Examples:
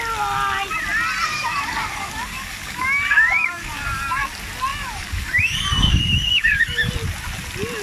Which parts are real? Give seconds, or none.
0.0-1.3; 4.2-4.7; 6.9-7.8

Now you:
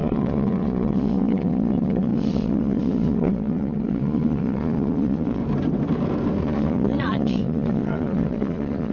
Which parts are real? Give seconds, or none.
5.4-6.4

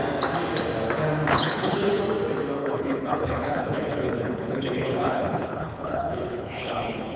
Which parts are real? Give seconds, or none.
0.0-1.3; 2.0-2.6

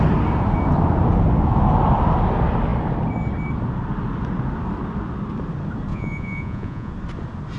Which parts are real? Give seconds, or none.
0.0-5.9; 6.9-7.6